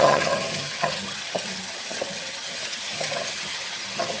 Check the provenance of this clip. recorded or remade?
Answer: remade